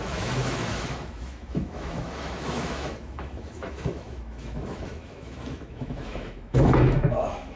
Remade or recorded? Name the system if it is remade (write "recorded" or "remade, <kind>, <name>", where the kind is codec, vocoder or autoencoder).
remade, autoencoder, DAC-VAE